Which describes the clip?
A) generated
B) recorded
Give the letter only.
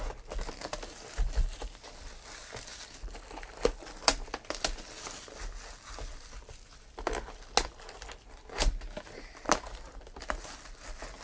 B